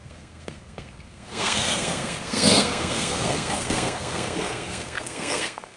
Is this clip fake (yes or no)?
yes